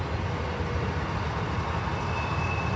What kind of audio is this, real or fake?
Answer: real